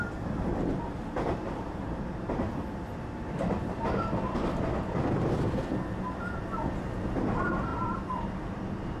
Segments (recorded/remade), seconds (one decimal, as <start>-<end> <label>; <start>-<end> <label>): 0.0-9.0 recorded